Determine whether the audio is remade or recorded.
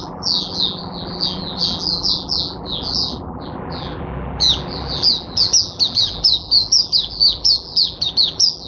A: remade